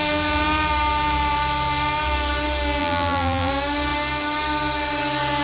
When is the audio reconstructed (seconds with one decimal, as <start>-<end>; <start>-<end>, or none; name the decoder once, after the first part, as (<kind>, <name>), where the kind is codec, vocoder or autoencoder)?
2.8-3.5 (vocoder, BigVGAN v2)